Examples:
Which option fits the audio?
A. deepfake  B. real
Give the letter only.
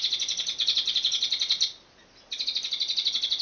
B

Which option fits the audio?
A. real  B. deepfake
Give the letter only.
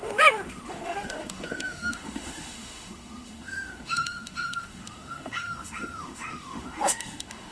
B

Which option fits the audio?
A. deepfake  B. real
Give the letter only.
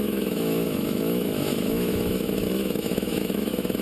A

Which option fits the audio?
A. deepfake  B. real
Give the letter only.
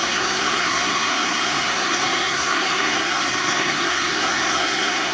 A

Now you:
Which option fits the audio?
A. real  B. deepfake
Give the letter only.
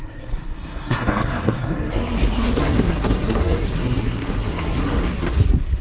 B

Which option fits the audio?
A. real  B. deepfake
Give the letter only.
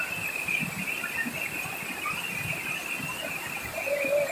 A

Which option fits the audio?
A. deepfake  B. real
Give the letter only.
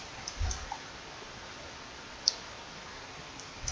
B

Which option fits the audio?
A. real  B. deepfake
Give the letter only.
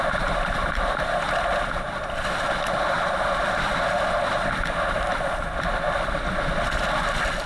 A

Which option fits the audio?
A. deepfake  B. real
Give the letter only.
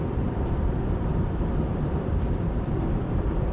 A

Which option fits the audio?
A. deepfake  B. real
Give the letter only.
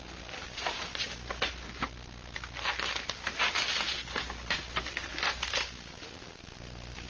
B